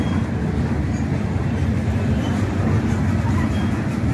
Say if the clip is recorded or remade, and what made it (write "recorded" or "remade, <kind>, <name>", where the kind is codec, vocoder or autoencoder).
recorded